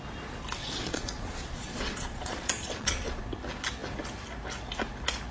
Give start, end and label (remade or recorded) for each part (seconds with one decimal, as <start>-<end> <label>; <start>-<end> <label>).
0.0-0.6 recorded; 0.6-3.2 remade; 3.2-5.3 recorded